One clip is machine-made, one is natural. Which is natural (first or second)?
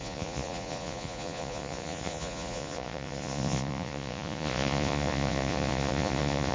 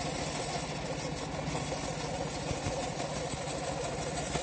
second